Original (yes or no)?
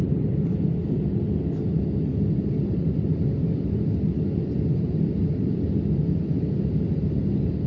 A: yes